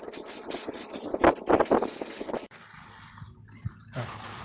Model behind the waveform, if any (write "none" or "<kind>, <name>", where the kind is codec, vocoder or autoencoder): none